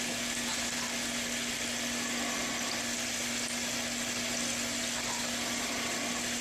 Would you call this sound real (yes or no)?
yes